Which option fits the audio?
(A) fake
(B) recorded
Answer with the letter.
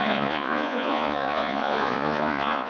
A